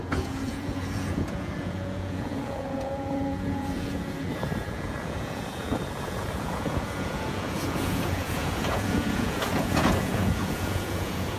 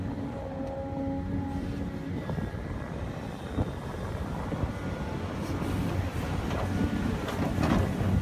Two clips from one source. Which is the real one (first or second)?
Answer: second